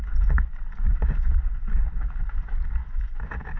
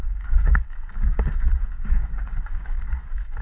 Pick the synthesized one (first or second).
second